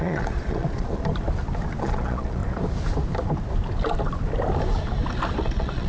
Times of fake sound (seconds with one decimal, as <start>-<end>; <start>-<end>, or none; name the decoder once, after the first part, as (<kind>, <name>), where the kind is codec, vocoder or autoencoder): 0.0-1.0 (vocoder, Vocos); 1.8-2.4; 5.4-5.9

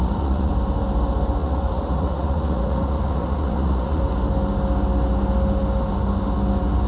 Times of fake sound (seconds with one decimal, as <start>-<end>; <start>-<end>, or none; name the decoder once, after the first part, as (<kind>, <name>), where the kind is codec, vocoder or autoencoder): 0.0-0.5 (vocoder, Vocos); 1.4-4.0

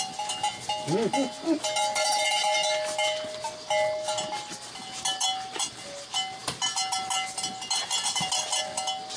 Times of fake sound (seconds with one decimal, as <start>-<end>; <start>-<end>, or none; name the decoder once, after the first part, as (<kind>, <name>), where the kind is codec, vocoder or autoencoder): none

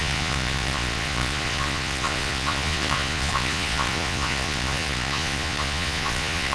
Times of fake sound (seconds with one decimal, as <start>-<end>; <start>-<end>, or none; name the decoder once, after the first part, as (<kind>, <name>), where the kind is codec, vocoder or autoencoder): 0.0-6.5 (vocoder, Vocos)

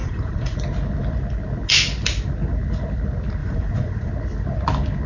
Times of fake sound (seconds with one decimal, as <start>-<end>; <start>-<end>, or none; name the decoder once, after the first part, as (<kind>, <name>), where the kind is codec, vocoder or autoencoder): 0.0-0.6 (vocoder, Vocos); 3.4-4.1

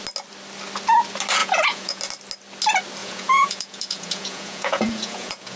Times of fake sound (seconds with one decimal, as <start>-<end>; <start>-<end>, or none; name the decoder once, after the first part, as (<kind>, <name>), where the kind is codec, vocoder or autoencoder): 1.4-2.0 (vocoder, Vocos); 3.0-5.6

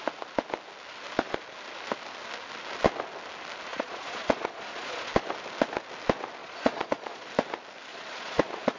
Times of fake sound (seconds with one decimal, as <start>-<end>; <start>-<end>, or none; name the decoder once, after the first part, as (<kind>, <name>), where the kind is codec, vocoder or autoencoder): 3.7-5.1 (vocoder, Vocos); 6.4-7.3; 7.9-8.8

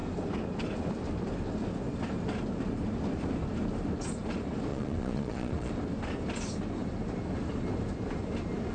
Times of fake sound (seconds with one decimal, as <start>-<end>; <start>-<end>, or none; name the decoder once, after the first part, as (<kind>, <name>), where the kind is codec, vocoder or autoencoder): 4.7-5.7 (vocoder, Vocos)